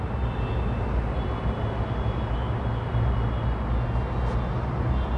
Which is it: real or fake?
real